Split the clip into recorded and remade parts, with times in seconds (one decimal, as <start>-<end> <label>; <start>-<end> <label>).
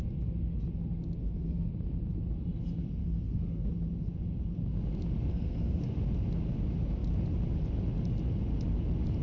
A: 0.0-1.2 recorded; 1.2-1.7 remade; 1.7-3.0 recorded; 3.0-3.7 remade; 3.7-5.3 recorded; 5.3-5.9 remade; 5.9-9.2 recorded